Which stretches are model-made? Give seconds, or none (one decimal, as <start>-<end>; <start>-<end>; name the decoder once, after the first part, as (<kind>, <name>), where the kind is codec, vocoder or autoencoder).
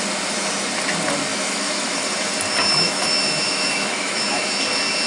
1.3-1.9 (autoencoder, DAC-VAE); 2.7-4.6